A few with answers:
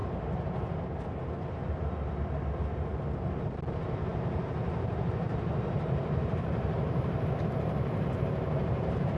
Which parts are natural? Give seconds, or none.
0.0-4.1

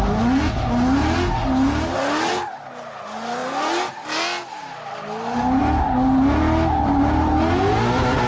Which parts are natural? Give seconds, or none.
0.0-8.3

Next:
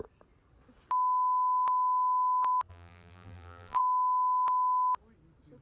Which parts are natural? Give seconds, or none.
0.0-2.7; 3.8-5.6

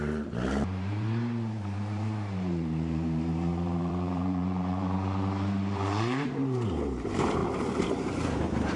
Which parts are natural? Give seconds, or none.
7.4-8.3